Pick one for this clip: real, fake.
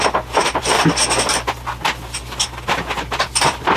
real